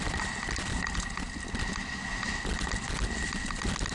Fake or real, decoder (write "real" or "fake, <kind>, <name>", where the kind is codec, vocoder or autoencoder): real